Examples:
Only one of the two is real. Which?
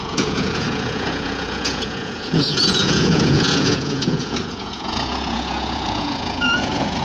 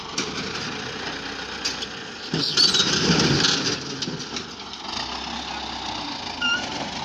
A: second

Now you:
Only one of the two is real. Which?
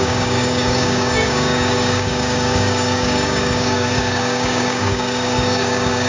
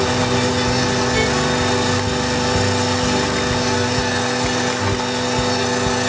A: second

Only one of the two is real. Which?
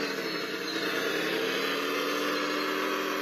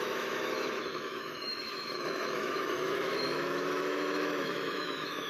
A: first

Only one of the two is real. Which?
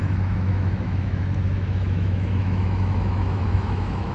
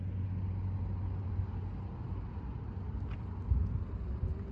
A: second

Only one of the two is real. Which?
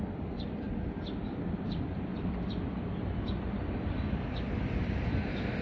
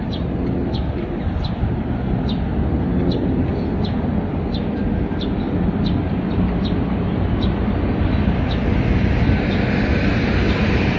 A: second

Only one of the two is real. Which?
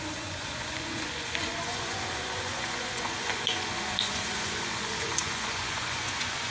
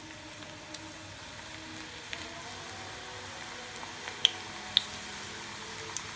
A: second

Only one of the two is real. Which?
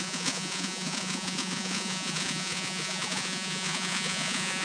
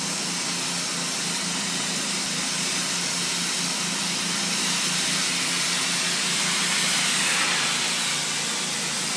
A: second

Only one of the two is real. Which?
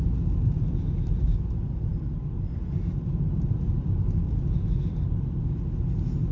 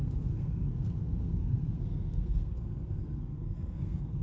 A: first